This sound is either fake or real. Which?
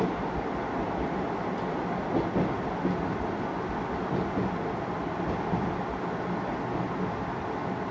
real